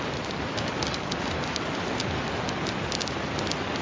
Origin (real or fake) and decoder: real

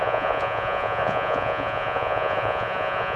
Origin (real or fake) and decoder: fake, vocoder, Vocos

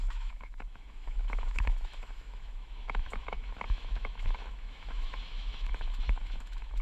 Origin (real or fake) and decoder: fake, autoencoder, DAC-VAE